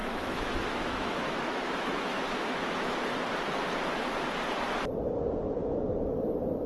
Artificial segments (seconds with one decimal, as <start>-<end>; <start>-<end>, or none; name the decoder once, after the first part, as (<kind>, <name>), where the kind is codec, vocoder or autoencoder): 0.0-3.0 (autoencoder, DAC-VAE)